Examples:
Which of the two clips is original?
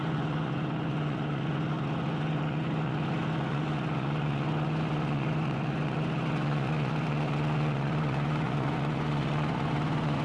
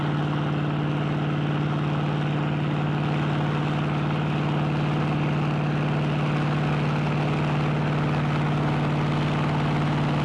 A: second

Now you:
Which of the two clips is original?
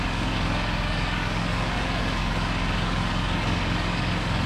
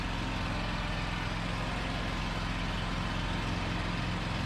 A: second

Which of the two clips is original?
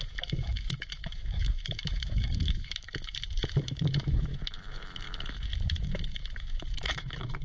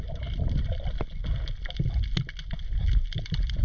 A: second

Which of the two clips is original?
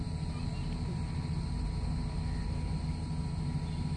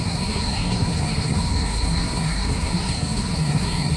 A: first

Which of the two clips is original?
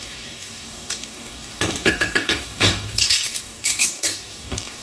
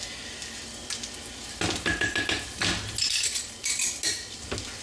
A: second